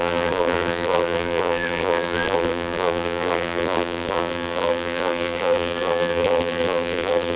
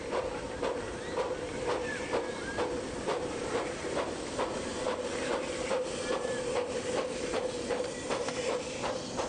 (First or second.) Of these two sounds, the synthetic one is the first